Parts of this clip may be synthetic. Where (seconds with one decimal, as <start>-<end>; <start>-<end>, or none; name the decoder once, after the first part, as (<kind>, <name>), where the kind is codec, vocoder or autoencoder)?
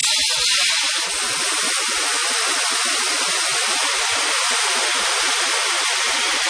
none